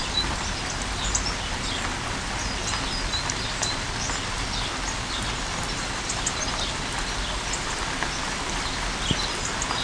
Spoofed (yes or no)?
no